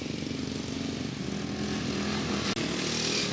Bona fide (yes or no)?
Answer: yes